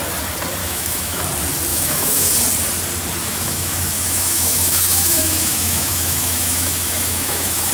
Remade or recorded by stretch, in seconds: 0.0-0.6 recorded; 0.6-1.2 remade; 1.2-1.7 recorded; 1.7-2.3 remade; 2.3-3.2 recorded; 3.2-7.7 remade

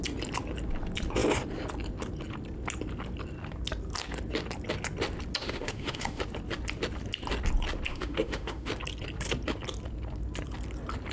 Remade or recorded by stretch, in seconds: 0.0-5.4 recorded; 5.4-6.2 remade; 6.2-7.9 recorded; 7.9-8.7 remade; 8.7-11.1 recorded

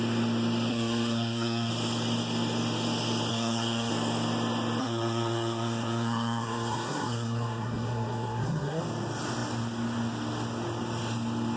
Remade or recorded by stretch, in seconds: 0.0-0.7 recorded; 0.7-1.7 remade; 1.7-3.3 recorded; 3.3-3.9 remade; 3.9-4.8 recorded; 4.8-8.8 remade; 8.8-11.6 recorded